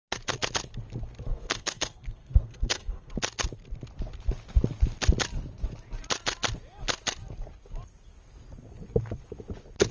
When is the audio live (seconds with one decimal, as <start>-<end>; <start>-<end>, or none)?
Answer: 0.0-1.3; 3.1-9.9